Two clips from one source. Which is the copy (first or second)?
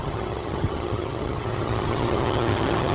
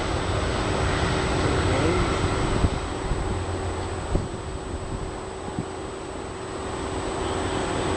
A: first